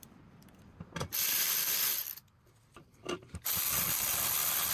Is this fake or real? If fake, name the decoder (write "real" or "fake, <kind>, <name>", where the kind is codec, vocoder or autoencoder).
fake, vocoder, BigVGAN v2